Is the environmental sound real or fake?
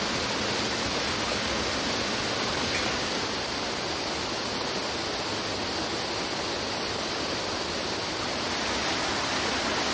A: real